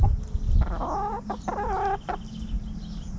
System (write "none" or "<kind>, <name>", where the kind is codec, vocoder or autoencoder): none